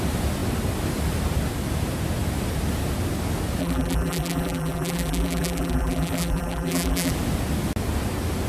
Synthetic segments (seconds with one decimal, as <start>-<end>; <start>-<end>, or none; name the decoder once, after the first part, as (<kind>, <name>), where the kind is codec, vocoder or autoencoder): 3.6-7.1 (vocoder, BigVGAN v2)